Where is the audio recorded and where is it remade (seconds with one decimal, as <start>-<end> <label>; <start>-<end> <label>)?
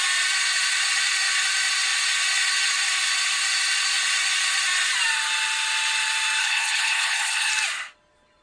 0.0-6.4 recorded; 6.4-7.5 remade; 7.5-8.4 recorded